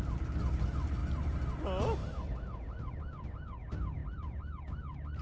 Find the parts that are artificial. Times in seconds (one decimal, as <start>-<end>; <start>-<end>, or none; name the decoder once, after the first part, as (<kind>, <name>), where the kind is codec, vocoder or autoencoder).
none